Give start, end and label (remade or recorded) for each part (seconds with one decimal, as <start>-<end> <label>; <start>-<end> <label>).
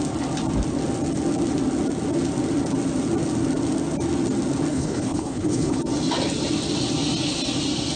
0.0-4.7 recorded; 4.7-5.8 remade; 5.8-8.0 recorded